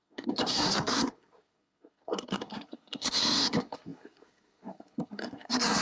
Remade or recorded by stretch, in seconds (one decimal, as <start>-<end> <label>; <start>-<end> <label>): 0.0-5.8 remade

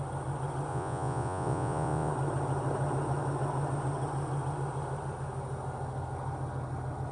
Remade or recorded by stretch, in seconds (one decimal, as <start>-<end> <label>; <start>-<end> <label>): 0.0-0.7 recorded; 0.7-2.1 remade; 2.1-7.1 recorded

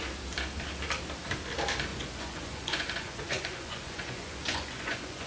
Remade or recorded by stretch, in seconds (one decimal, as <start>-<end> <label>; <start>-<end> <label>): 0.0-1.9 recorded; 1.9-5.3 remade